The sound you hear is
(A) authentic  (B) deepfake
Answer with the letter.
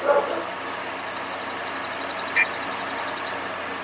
A